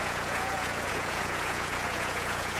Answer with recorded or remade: remade